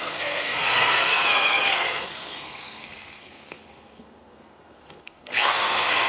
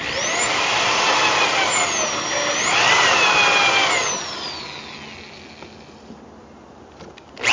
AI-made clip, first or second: first